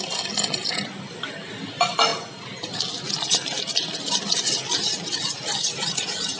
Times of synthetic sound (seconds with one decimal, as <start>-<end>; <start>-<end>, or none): none